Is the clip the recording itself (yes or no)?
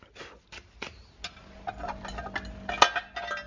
yes